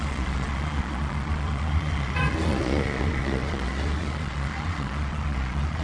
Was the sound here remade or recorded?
remade